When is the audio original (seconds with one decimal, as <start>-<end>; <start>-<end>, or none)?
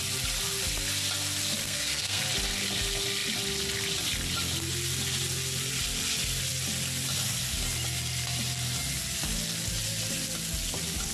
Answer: 0.0-1.6; 2.2-11.1